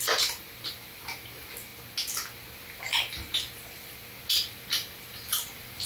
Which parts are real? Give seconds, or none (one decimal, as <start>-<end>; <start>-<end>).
1.7-4.2